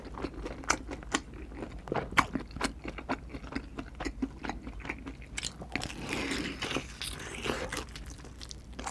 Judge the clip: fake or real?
real